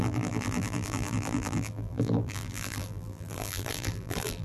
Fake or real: fake